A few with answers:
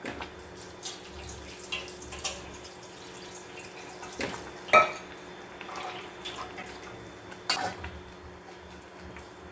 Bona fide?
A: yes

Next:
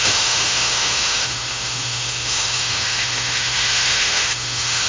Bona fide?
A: no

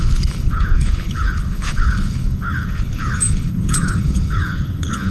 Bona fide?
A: no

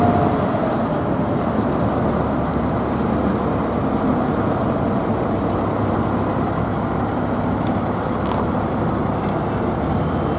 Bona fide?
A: yes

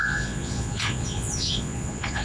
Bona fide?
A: no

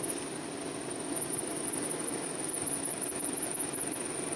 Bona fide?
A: yes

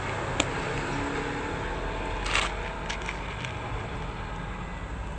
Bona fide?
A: yes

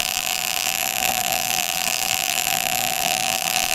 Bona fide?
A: no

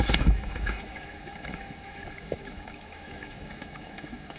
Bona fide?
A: no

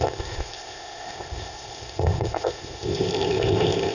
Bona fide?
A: no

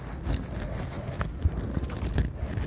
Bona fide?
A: yes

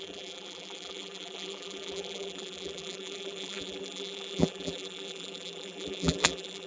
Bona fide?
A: no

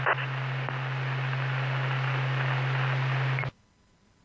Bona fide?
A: yes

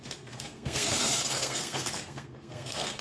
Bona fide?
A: no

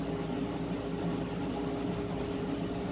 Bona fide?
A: yes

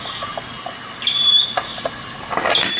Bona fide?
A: yes